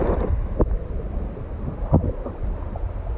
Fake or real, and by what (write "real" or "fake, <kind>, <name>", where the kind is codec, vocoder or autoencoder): real